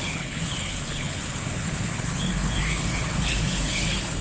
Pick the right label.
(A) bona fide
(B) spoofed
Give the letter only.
B